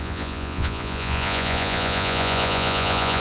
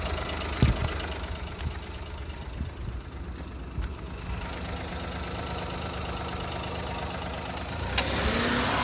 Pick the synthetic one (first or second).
first